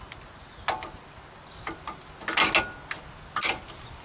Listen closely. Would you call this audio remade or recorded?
recorded